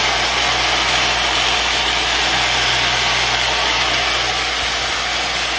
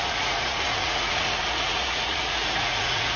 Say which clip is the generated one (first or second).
second